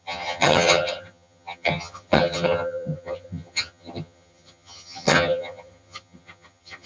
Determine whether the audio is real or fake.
fake